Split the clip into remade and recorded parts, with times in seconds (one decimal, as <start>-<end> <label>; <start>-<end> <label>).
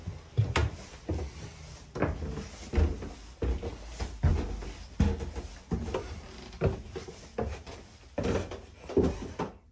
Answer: 0.0-9.7 recorded